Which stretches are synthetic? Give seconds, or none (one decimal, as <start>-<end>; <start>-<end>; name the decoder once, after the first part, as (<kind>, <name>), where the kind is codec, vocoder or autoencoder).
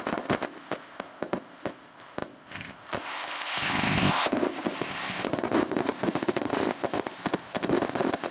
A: 0.0-8.3 (codec, ZipCodec)